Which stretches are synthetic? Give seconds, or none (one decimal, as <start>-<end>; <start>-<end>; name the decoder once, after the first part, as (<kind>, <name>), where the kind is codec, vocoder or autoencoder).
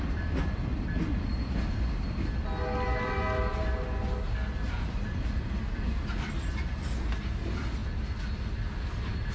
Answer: none